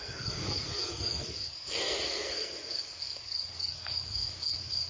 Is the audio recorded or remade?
remade